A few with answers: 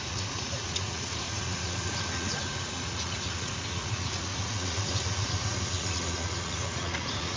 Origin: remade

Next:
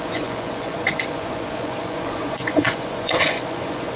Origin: remade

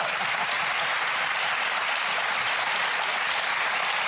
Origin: recorded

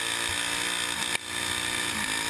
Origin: recorded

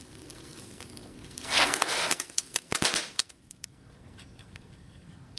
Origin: remade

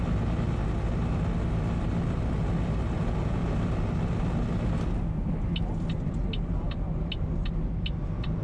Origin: recorded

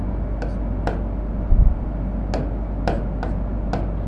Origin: recorded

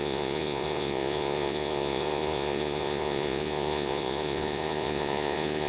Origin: remade